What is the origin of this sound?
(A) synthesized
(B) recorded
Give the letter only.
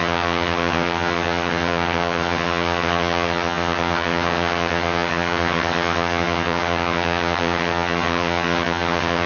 A